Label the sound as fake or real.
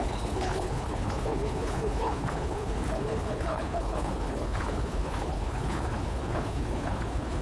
fake